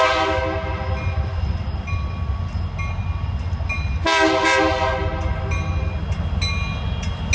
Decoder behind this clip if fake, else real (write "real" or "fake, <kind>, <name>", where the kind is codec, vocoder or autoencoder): real